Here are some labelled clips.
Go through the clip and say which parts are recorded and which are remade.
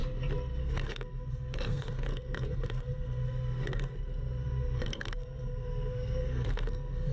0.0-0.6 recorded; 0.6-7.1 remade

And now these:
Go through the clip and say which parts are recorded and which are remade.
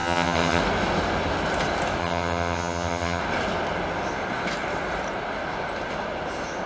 0.0-0.6 remade; 0.6-2.0 recorded; 2.0-3.2 remade; 3.2-6.7 recorded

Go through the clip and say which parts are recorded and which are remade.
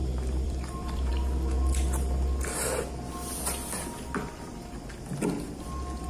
0.0-1.1 remade; 1.1-6.1 recorded